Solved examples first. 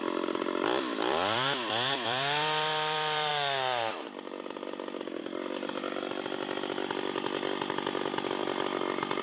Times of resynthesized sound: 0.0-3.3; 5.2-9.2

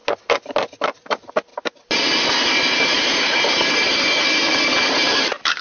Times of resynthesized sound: 0.8-1.5; 4.8-5.6

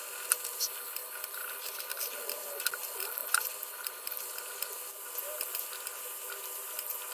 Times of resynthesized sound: 1.0-2.6; 3.2-5.6

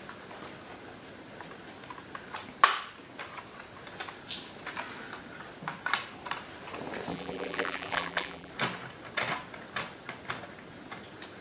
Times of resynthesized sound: 7.1-8.5

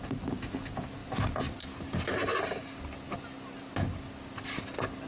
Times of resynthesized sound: none

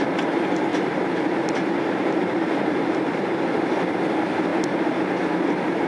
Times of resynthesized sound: 0.7-3.5

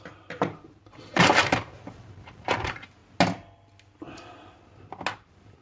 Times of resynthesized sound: 0.0-3.0; 5.1-5.6